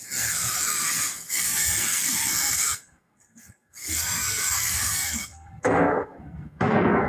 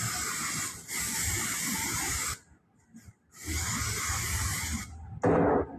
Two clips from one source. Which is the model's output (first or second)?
first